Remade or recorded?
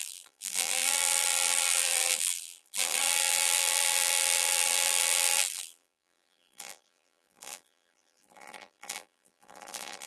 remade